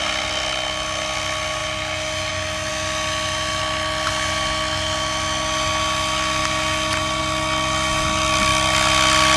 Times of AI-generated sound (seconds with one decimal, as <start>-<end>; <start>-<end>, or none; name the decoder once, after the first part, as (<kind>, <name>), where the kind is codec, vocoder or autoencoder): none